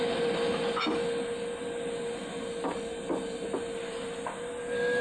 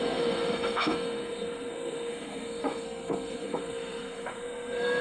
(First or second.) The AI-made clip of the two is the second